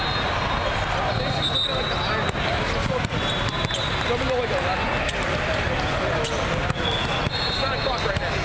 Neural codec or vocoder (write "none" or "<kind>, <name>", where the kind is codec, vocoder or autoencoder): none